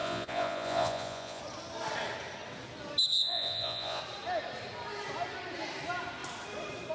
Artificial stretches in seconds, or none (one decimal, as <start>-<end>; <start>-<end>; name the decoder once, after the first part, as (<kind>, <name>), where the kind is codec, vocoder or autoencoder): 0.0-1.4 (vocoder, Vocos); 3.1-4.0